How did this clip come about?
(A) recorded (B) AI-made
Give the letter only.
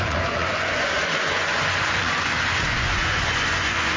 B